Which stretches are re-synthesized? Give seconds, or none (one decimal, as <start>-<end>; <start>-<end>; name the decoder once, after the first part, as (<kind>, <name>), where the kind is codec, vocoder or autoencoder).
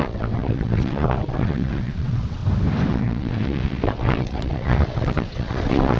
0.0-2.4 (vocoder, WaveNeXt); 2.9-6.0